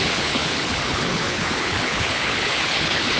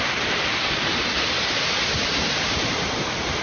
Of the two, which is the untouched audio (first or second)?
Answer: second